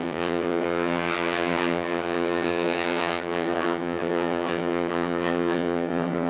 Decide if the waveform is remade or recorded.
remade